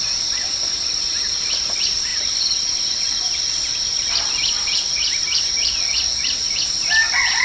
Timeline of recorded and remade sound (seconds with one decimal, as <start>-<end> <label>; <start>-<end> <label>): 0.0-7.4 recorded